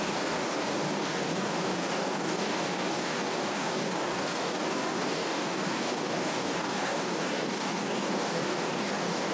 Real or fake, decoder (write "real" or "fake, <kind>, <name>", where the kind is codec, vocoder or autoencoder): fake, codec, DAC